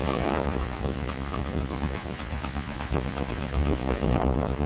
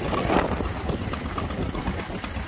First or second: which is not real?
first